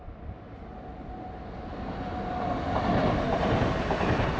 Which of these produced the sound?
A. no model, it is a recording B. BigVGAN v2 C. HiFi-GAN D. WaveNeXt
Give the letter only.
A